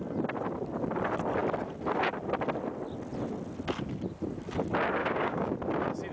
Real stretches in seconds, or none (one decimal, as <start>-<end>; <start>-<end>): 0.0-5.0; 5.5-6.1